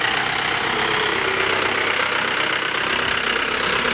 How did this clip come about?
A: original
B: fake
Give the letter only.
A